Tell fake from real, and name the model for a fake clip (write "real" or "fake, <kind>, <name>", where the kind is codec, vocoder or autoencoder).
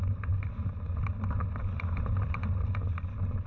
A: real